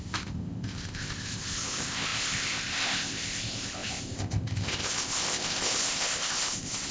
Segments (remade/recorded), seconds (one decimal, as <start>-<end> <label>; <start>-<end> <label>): 0.0-6.9 remade